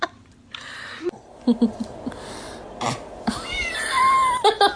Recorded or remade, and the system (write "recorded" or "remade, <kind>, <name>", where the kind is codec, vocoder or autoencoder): remade, vocoder, BigVGAN v2